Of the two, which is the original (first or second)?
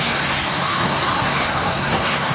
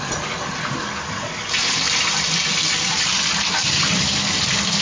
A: second